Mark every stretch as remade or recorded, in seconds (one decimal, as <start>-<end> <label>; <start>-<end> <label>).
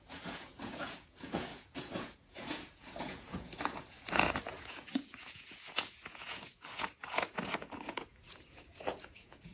0.0-9.5 remade